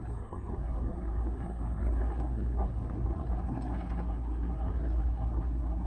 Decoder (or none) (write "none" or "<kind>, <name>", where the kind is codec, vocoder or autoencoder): codec, SNAC